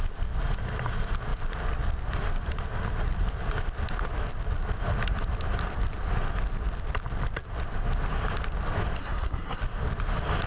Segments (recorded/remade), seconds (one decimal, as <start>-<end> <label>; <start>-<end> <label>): 0.0-9.0 recorded; 9.0-9.6 remade; 9.6-10.5 recorded